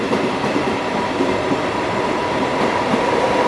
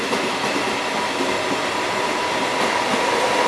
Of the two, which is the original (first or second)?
second